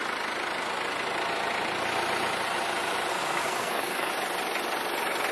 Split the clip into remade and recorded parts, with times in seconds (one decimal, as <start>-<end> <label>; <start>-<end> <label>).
0.0-3.1 recorded; 3.1-4.1 remade; 4.1-5.3 recorded